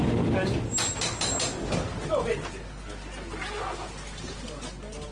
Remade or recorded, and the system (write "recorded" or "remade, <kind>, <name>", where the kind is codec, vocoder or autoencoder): recorded